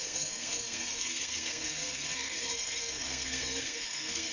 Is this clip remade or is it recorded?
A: remade